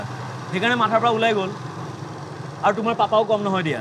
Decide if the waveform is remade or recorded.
recorded